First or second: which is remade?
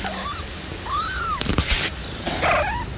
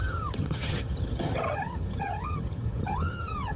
second